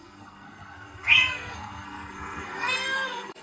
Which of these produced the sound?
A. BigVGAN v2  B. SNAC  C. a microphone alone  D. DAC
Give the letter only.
B